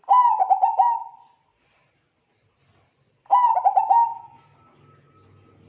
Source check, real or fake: real